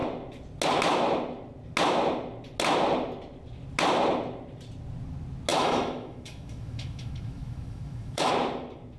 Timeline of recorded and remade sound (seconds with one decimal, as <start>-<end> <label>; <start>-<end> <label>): 0.0-5.5 recorded; 5.5-8.3 remade; 8.3-9.0 recorded